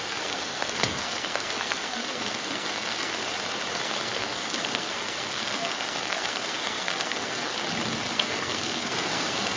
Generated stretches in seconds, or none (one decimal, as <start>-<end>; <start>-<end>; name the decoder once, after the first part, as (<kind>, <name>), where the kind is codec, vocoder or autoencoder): 0.0-3.2 (codec, SNAC); 3.7-7.5; 8.1-9.6

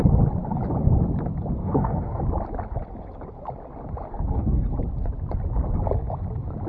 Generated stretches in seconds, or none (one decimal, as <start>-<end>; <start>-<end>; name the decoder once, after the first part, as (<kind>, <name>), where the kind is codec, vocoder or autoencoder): 1.6-2.2 (codec, SNAC); 4.1-4.7

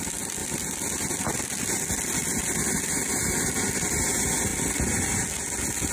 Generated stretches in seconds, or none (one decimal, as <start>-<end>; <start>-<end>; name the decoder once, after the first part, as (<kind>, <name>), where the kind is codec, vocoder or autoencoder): none

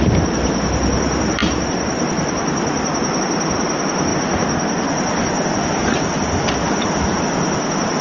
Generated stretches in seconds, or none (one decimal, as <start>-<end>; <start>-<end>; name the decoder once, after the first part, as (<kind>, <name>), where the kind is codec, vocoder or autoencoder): none

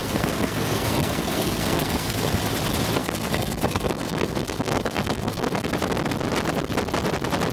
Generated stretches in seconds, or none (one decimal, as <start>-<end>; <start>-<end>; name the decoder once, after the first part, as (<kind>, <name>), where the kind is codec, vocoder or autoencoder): 0.0-2.4 (codec, SNAC); 3.0-5.7

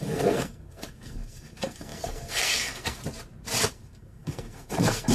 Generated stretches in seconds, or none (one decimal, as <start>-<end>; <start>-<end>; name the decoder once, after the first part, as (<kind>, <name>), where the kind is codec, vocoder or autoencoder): 0.0-3.0 (codec, SNAC); 3.7-5.1